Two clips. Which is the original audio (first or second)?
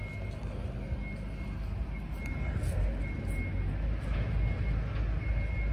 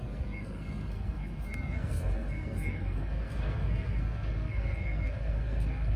first